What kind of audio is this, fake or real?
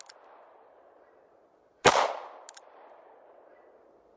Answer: real